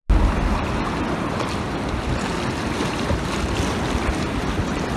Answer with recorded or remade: recorded